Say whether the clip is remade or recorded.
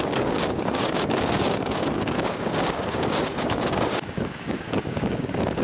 remade